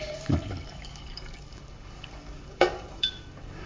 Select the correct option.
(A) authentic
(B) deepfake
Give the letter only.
B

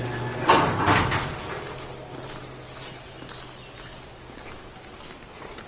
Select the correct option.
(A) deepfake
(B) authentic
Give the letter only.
B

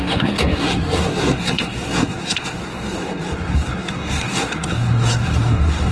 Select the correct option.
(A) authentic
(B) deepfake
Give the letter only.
B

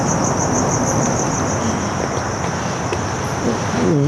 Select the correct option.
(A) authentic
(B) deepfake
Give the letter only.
A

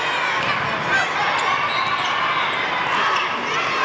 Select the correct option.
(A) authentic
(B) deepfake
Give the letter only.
A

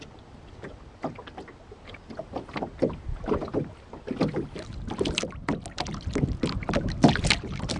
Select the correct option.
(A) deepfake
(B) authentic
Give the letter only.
B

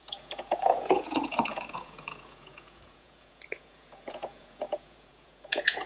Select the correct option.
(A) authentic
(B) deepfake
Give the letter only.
B